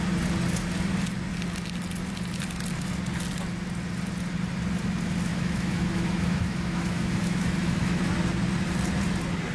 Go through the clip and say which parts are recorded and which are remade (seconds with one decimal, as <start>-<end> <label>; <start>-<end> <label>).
0.0-5.3 recorded; 5.3-8.0 remade; 8.0-9.5 recorded